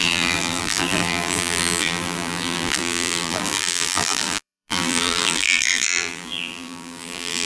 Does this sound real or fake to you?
fake